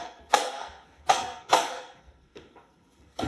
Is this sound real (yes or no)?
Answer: no